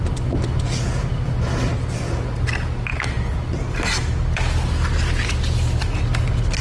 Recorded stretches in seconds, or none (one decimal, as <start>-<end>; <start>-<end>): 0.0-6.6